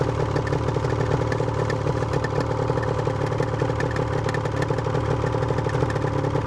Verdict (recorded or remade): recorded